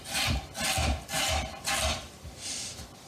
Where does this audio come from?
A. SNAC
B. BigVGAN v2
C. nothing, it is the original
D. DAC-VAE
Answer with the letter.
C